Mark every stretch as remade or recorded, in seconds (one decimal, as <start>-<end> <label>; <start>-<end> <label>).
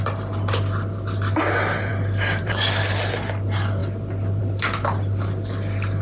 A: 0.0-6.0 recorded